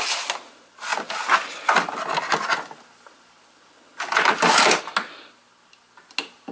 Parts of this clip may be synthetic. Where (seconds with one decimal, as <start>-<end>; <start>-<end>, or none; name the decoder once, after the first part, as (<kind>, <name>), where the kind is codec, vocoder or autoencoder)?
none